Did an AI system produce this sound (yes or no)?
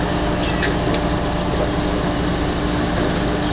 no